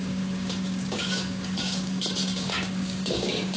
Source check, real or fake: fake